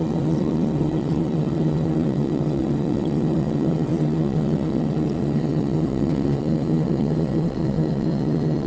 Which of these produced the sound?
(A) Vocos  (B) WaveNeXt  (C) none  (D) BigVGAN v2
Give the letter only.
B